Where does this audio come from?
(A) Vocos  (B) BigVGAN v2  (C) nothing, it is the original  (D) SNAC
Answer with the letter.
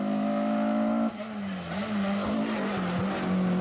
C